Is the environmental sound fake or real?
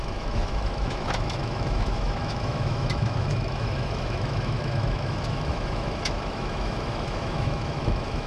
fake